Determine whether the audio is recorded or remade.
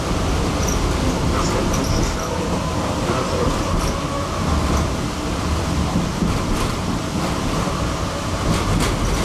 recorded